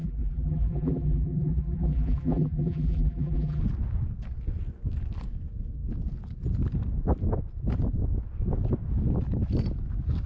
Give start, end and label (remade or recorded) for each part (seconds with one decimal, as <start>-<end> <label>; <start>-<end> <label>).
0.0-3.6 remade; 3.6-10.3 recorded